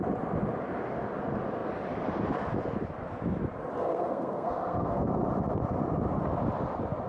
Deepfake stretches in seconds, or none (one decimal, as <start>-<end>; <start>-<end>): 3.8-5.1